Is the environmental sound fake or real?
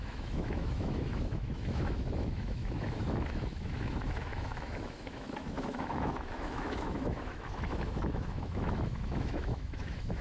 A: fake